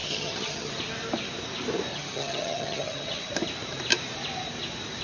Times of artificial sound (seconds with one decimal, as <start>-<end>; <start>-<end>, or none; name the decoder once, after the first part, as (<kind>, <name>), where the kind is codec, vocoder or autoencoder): 0.0-0.7 (vocoder, HiFi-GAN); 1.9-3.3